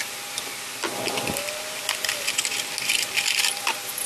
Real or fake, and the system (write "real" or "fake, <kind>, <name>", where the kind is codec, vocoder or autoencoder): real